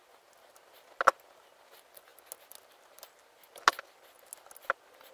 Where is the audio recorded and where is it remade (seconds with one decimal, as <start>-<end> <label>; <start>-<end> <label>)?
0.0-5.1 recorded